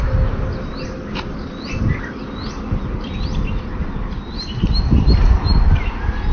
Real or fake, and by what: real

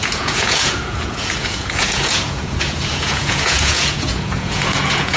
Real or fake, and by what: fake, vocoder, Vocos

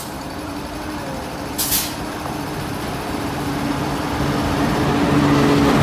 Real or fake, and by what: real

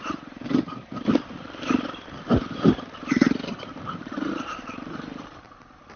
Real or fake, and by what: fake, vocoder, BigVGAN v2